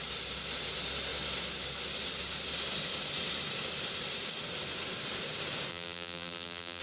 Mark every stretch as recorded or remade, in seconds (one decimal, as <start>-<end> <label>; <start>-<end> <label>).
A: 0.0-5.7 recorded; 5.7-6.8 remade